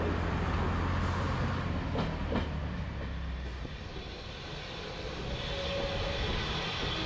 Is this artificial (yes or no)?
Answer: no